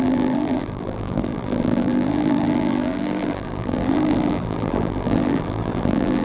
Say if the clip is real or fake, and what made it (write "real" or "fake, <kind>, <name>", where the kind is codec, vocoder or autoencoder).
fake, vocoder, BigVGAN v2